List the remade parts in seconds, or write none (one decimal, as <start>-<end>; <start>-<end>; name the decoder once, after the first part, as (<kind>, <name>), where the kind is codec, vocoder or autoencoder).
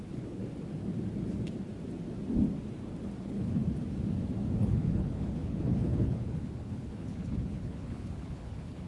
0.0-0.4 (codec, HILCodec); 3.2-3.6; 4.6-8.9